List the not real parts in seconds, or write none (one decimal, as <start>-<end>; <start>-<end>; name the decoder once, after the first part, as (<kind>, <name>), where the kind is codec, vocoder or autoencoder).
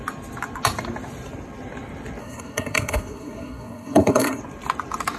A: 2.2-4.4 (codec, SNAC)